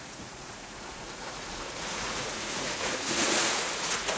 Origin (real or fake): fake